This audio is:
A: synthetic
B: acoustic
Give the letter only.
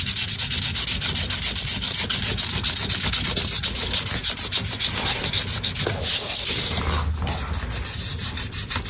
B